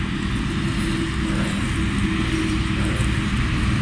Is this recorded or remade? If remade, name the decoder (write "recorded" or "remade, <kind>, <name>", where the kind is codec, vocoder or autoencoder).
recorded